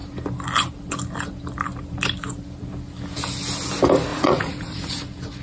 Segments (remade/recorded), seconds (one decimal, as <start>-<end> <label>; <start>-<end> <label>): 0.0-4.1 recorded; 4.1-4.9 remade; 4.9-5.4 recorded